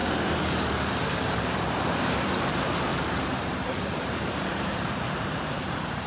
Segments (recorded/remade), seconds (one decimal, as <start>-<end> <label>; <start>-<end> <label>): 0.0-6.1 remade